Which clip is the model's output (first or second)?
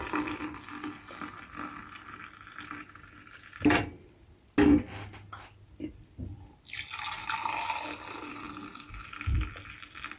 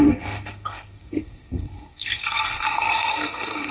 second